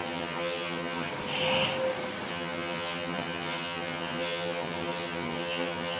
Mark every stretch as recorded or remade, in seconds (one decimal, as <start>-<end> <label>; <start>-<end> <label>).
0.0-1.1 remade; 1.1-2.3 recorded; 2.3-6.0 remade